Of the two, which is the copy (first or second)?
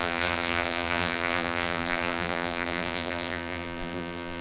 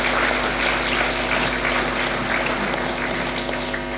first